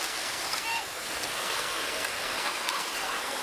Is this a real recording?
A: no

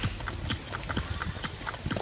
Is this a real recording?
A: yes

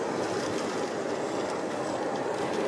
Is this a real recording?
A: yes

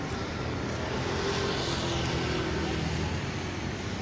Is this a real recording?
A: yes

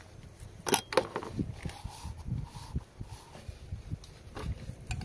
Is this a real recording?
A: yes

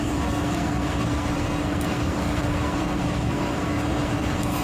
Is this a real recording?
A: no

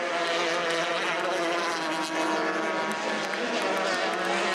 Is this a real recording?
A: yes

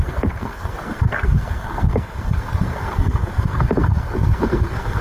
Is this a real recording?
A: no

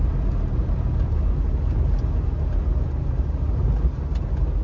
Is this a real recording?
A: yes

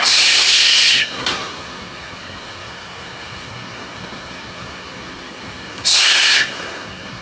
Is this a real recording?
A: no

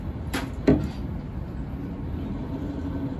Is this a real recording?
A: yes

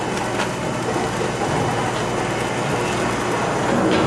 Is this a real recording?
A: yes